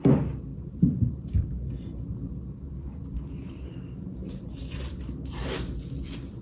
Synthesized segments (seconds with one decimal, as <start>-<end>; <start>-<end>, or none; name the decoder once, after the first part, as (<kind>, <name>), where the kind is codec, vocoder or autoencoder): 0.5-1.3 (vocoder, BigVGAN v2); 2.1-4.6